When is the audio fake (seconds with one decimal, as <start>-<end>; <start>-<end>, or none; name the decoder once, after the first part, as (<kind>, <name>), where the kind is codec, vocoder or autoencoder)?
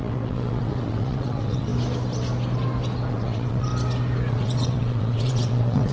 0.0-1.7 (vocoder, WaveNeXt); 3.1-3.7; 4.3-5.9